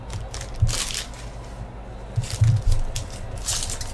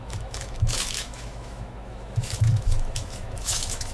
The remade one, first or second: second